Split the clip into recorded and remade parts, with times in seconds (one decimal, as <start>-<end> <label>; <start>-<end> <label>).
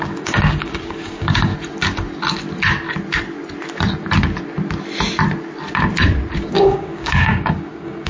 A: 0.0-1.5 remade; 1.5-6.4 recorded; 6.4-8.1 remade